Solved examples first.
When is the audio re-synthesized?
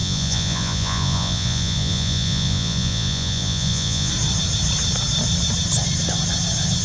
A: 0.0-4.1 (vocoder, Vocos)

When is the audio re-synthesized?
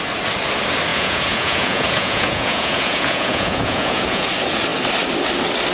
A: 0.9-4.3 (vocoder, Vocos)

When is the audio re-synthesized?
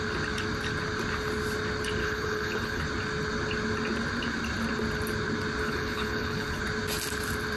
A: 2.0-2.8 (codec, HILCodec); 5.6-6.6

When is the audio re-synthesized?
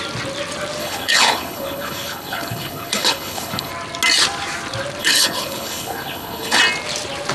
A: 0.8-3.7 (codec, HILCodec); 5.0-6.6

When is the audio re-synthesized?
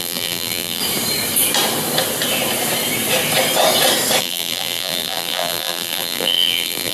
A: 0.0-0.8 (vocoder, BigVGAN v2); 4.2-6.9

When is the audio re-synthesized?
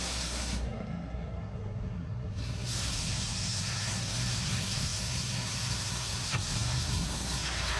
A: 0.0-7.8 (codec, SNAC)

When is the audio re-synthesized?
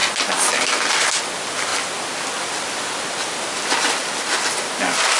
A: none